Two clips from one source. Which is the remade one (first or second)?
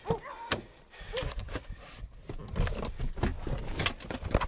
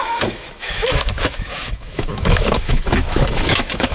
second